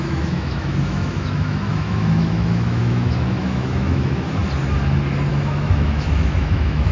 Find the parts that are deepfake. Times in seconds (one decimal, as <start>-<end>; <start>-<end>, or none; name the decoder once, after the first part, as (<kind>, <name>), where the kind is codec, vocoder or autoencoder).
0.0-4.4 (autoencoder, DAC-VAE); 5.3-6.9